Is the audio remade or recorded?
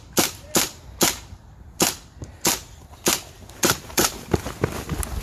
recorded